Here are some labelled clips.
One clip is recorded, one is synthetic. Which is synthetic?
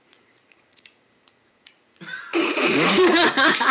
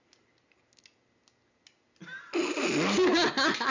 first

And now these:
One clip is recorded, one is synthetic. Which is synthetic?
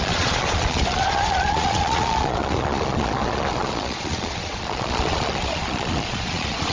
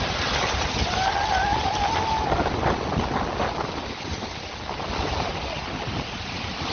first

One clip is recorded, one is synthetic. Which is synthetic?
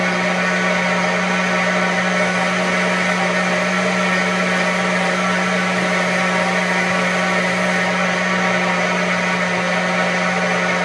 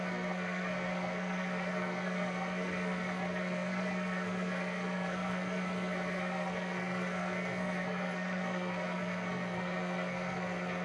second